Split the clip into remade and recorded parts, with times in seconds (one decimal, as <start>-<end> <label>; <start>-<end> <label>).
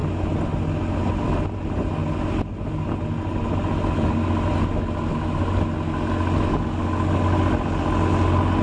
0.0-8.6 recorded